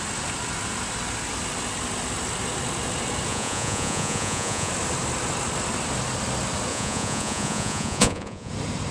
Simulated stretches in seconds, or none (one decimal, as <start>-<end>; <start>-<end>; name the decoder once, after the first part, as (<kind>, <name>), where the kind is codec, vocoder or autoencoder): 3.3-4.7 (vocoder, Vocos); 6.7-8.5